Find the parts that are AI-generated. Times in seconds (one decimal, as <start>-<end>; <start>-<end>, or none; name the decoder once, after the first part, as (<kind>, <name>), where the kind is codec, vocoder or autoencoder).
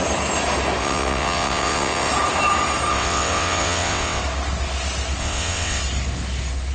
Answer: 0.8-2.1 (vocoder, WaveNeXt); 2.9-4.2; 5.2-5.8